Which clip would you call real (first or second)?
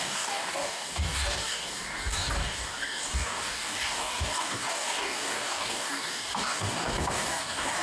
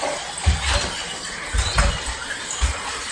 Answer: second